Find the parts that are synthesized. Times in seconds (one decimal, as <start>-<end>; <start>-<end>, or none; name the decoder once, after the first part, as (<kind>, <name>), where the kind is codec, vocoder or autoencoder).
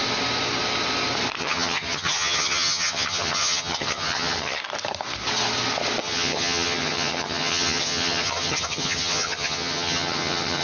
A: 1.4-4.6 (vocoder, HiFi-GAN); 6.0-10.6